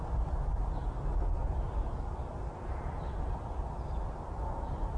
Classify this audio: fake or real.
real